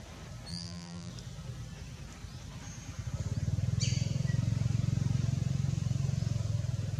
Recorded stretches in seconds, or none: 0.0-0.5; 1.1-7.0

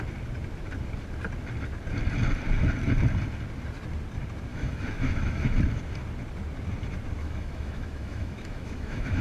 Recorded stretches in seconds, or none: 0.0-4.5; 5.6-7.2

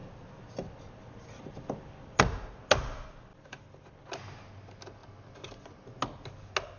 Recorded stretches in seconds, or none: 0.0-3.3; 3.9-6.8